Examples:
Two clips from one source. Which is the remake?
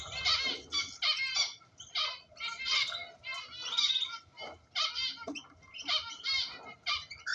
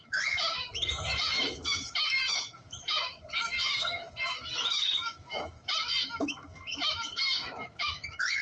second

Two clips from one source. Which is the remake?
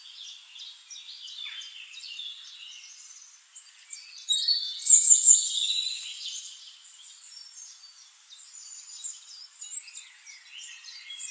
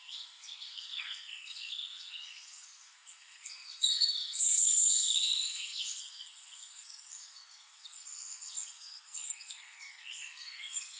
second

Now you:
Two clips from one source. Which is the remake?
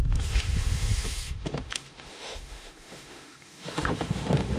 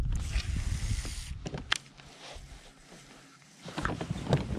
first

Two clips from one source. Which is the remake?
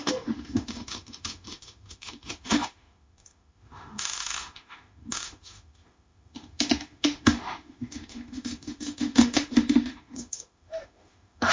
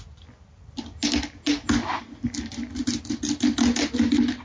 first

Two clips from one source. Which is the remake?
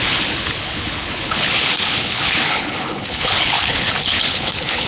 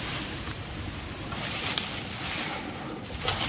first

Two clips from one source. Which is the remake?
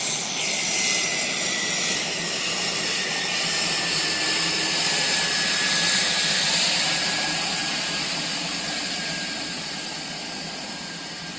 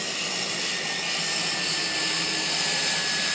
first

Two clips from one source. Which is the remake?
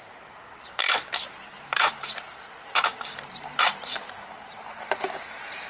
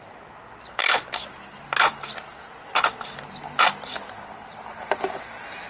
first